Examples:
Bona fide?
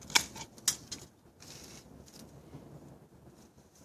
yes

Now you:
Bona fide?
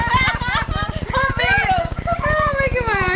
yes